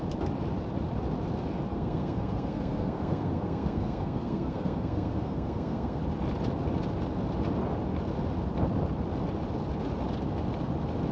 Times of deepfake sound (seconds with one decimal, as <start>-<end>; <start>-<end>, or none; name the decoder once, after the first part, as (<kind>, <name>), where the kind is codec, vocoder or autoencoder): 1.7-6.0 (codec, SNAC)